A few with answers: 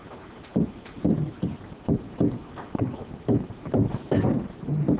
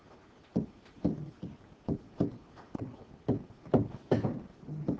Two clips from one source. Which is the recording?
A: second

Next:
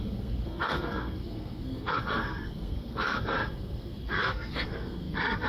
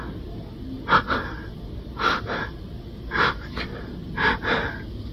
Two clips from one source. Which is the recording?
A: second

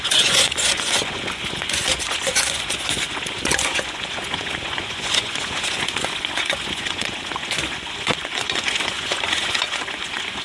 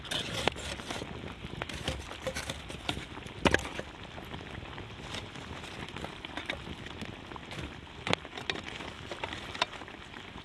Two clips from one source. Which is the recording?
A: second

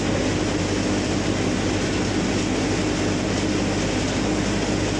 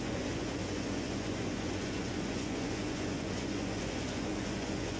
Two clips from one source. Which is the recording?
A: first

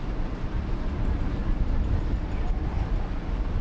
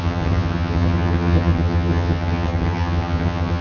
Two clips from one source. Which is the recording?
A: first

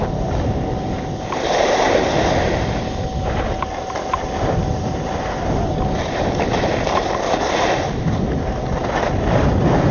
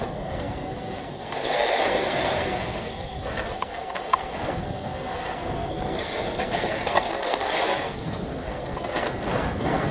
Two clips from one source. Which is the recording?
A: first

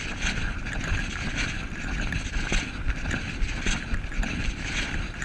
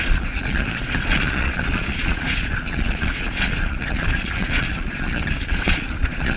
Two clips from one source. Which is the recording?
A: first